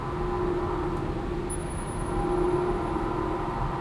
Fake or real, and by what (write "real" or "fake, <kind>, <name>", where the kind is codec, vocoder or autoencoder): real